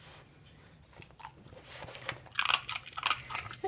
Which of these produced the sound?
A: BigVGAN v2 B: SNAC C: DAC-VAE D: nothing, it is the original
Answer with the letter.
D